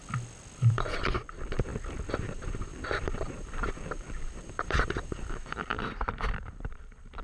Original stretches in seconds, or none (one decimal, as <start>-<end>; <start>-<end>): 0.0-0.6; 1.7-2.2